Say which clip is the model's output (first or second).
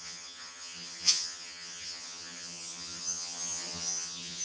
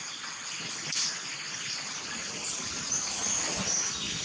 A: first